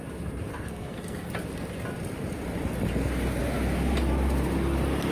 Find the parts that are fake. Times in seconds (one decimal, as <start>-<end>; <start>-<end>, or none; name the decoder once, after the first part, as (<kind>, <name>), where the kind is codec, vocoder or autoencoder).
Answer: 0.5-1.3 (codec, SNAC)